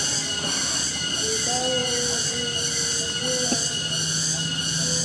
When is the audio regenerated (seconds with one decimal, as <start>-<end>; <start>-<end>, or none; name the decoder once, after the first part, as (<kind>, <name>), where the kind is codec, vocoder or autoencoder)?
none